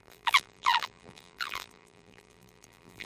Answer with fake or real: fake